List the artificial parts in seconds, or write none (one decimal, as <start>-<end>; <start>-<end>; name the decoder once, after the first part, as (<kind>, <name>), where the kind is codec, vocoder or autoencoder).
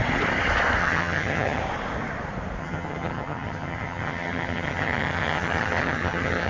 0.8-1.6 (vocoder, HiFi-GAN); 2.6-6.5